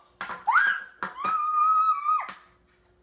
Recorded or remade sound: recorded